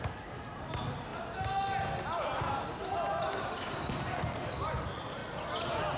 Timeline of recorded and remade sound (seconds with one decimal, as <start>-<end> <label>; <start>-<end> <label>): 0.0-1.1 remade; 1.1-3.1 recorded; 3.1-5.2 remade; 5.2-6.0 recorded